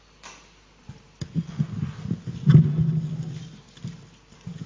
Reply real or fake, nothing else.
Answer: real